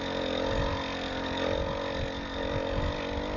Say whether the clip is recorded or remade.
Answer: recorded